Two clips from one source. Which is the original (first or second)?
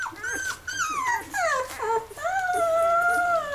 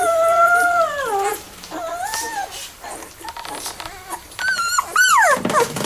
first